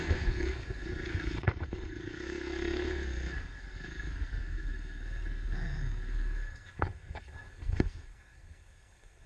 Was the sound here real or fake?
fake